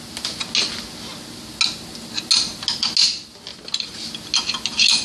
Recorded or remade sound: recorded